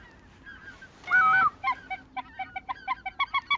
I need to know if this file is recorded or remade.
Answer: recorded